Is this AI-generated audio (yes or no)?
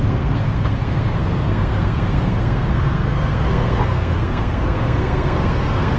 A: yes